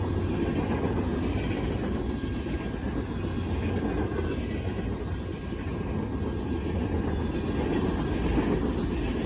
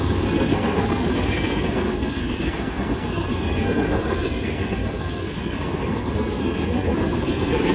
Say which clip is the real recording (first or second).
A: first